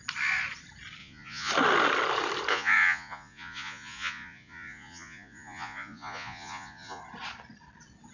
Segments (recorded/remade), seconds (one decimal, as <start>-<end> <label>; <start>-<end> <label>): 0.0-1.0 recorded; 1.0-1.5 remade; 1.5-2.5 recorded; 2.5-7.0 remade; 7.0-8.1 recorded